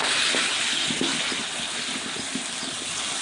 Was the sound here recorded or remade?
recorded